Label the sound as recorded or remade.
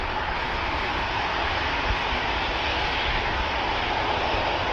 recorded